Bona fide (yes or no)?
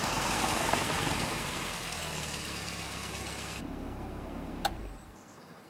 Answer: no